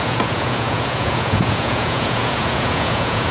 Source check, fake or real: fake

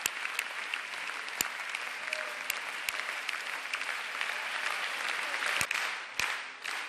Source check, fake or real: real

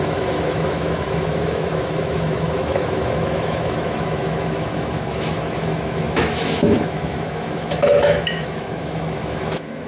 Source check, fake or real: fake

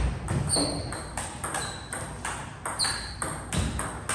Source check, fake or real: real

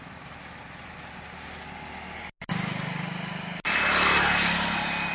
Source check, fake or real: real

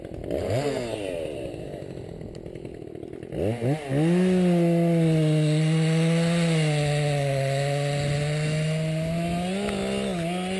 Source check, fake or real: real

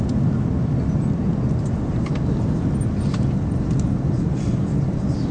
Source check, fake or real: real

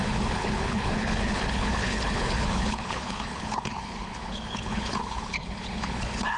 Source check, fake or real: fake